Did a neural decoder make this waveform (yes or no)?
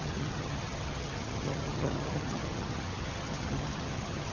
yes